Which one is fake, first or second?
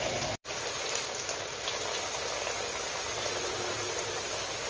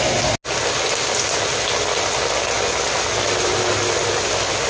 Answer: first